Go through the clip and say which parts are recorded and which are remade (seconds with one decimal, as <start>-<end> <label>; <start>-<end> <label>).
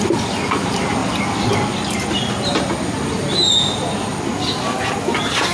0.0-5.5 recorded